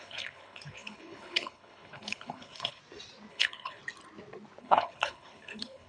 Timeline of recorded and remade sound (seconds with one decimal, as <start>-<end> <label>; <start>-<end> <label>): 0.0-2.8 remade; 2.8-3.3 recorded; 3.3-3.8 remade; 3.8-4.6 recorded; 4.6-5.9 remade